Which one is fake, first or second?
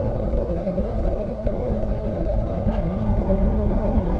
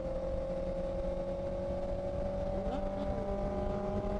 first